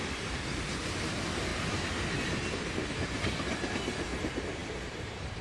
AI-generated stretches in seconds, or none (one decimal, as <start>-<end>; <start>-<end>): 0.0-1.5; 2.5-5.4